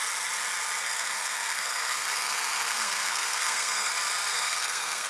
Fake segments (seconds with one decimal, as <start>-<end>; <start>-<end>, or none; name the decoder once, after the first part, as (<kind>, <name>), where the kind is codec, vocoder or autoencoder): 0.8-3.9 (codec, SNAC); 4.3-5.1